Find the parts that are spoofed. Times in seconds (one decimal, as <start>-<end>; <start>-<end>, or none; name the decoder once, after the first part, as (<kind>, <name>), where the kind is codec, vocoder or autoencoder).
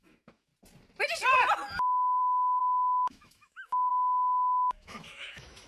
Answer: 0.0-0.5 (autoencoder, DAC-VAE); 2.2-5.7